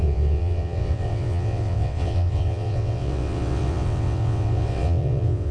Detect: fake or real fake